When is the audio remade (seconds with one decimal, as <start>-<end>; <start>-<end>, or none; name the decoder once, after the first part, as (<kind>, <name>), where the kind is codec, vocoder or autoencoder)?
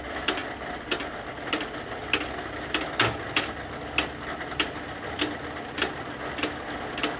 none